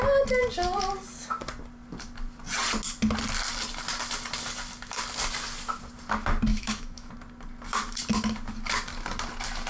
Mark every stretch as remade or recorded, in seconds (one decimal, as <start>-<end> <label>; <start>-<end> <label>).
0.0-6.5 recorded; 6.5-7.1 remade; 7.1-9.7 recorded